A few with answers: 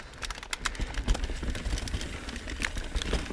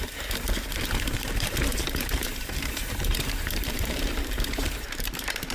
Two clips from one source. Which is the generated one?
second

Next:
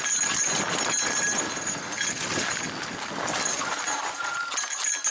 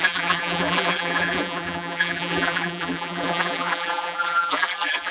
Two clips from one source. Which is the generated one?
second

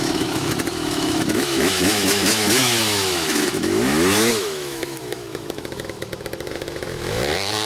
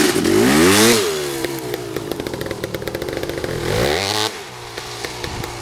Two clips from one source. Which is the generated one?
first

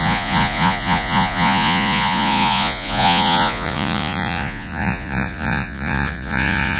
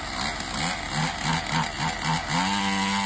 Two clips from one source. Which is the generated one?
first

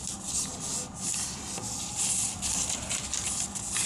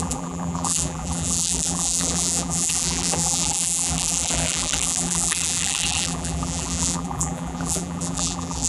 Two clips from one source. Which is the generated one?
second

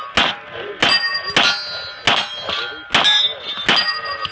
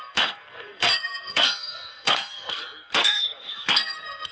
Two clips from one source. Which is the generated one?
second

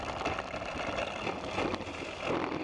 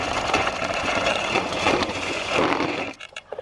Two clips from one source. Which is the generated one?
second